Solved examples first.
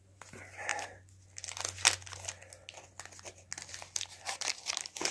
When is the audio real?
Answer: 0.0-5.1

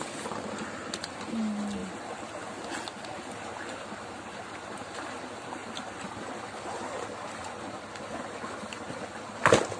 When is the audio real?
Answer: 0.0-9.8

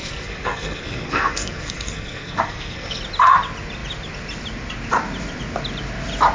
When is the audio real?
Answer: 3.0-6.3

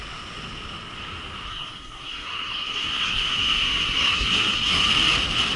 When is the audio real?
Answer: 0.0-1.5; 4.9-5.6

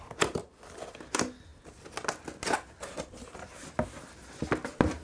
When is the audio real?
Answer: 0.0-5.0

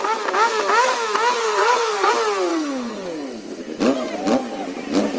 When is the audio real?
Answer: 0.0-1.4; 2.1-2.5; 3.8-5.2